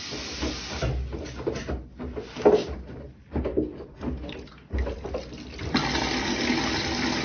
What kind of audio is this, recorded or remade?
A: recorded